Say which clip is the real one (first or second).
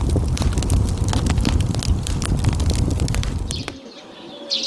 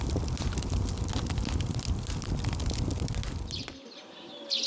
second